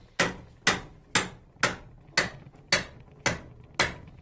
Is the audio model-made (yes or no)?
no